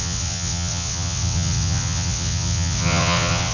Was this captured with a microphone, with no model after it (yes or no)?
no